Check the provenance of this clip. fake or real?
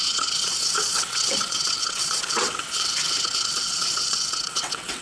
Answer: fake